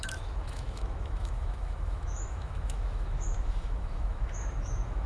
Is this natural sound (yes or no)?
no